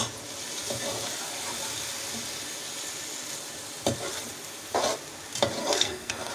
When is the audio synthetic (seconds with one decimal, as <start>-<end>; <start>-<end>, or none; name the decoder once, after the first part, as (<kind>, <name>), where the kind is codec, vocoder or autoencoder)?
5.6-6.3 (codec, SNAC)